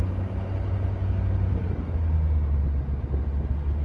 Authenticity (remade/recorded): recorded